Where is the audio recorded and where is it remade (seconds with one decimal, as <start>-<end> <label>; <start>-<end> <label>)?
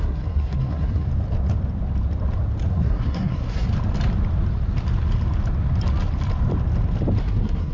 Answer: 0.0-1.1 remade; 1.1-2.7 recorded; 2.7-3.7 remade; 3.7-7.2 recorded; 7.2-7.7 remade